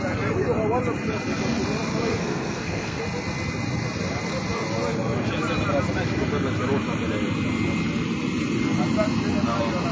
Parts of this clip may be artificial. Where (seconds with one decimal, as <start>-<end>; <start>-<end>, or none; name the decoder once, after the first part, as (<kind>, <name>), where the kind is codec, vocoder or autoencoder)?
2.1-3.0 (codec, SNAC)

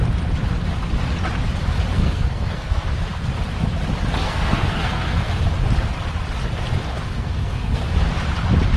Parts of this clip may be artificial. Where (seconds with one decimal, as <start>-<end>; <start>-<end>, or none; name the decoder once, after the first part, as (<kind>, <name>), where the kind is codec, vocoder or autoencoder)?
1.9-2.9 (codec, SNAC); 4.2-5.3; 7.0-7.8

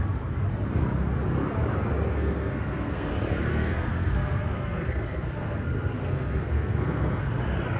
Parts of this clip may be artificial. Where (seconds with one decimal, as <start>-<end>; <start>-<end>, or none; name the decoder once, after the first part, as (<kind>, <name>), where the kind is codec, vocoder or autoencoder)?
2.1-3.1 (codec, SNAC); 3.5-7.3

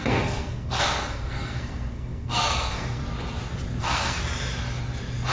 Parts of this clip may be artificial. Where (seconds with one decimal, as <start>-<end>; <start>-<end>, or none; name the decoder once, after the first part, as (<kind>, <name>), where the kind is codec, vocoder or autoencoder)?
0.0-3.0 (codec, SNAC); 3.8-4.2

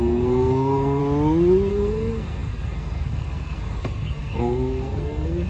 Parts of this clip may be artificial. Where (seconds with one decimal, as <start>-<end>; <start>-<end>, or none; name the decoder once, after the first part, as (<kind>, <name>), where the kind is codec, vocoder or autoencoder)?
0.0-1.0 (codec, SNAC); 1.7-5.5

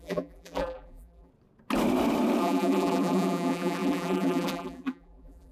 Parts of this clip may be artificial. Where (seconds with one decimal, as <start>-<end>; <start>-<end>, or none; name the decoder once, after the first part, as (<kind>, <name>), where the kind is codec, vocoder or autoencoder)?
0.0-1.3 (vocoder, BigVGAN v2); 2.4-5.5

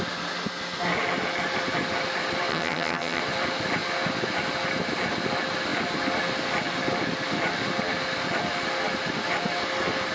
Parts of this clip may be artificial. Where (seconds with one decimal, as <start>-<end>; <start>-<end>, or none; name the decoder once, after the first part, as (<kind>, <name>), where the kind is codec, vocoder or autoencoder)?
2.5-3.2 (vocoder, HiFi-GAN)